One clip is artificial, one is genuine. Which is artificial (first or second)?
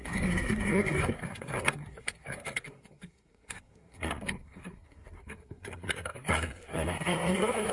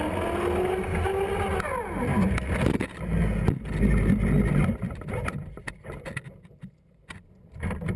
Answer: first